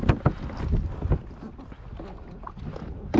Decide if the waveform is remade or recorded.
recorded